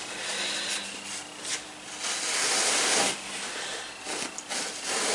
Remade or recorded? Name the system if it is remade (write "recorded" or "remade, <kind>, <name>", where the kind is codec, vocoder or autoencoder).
recorded